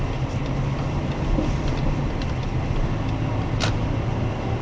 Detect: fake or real real